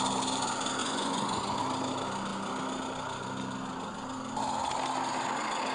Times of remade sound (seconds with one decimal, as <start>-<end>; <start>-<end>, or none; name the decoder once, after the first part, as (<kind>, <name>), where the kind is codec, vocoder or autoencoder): 0.8-1.6 (vocoder, Vocos)